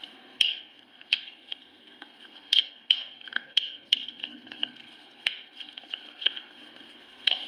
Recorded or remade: remade